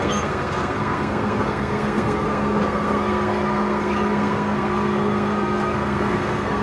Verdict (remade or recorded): remade